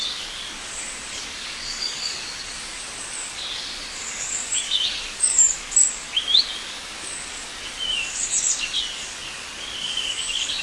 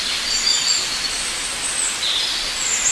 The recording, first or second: second